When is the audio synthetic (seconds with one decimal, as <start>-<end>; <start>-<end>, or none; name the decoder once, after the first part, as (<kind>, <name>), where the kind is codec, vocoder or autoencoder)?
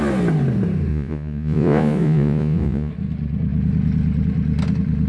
0.9-2.9 (vocoder, Vocos)